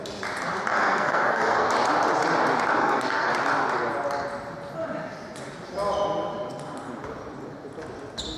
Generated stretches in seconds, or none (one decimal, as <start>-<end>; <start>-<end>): 0.7-1.7; 2.8-3.3